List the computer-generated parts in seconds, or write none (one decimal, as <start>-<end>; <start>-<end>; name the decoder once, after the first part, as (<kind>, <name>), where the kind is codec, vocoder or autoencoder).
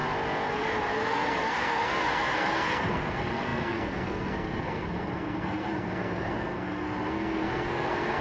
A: 0.5-8.2 (codec, SNAC)